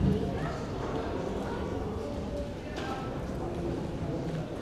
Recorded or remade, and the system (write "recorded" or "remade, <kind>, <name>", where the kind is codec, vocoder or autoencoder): recorded